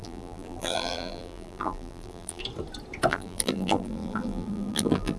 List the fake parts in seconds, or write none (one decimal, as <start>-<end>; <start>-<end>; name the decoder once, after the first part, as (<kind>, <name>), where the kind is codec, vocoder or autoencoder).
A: 0.0-2.4 (vocoder, BigVGAN v2); 3.1-5.2